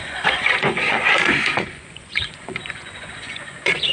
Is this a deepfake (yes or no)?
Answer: yes